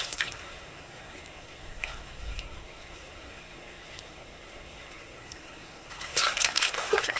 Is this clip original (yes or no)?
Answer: no